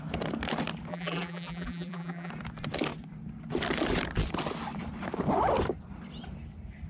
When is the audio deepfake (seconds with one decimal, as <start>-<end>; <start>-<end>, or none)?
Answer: 0.9-2.3